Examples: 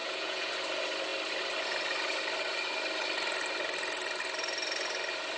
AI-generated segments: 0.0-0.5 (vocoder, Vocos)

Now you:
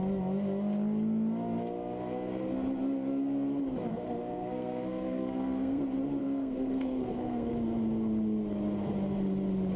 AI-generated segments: 3.9-5.8 (codec, SNAC); 6.2-7.5

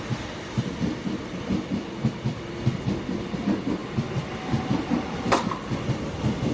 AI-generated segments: none

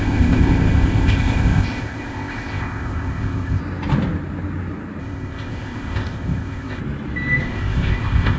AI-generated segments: 0.0-3.6 (codec, ZipCodec); 5.0-6.8; 7.4-8.4

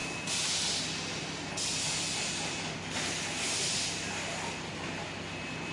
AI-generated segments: none

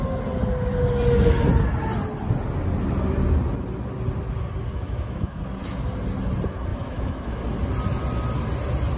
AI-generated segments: 4.7-5.4 (autoencoder, DAC-VAE); 6.7-7.4

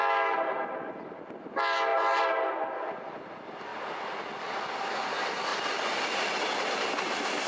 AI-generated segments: 1.9-2.5 (vocoder, BigVGAN v2); 3.7-4.2

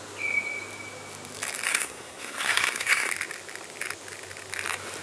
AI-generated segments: 1.7-3.1 (codec, SNAC)